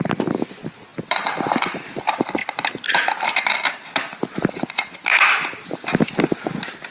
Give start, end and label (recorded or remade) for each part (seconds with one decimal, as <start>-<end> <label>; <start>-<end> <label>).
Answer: 0.0-0.9 recorded; 0.9-1.9 remade; 1.9-6.9 recorded